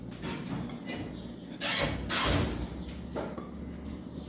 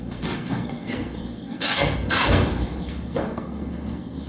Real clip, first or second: first